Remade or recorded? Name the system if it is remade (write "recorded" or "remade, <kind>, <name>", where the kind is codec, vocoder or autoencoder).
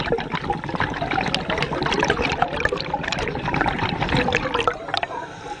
recorded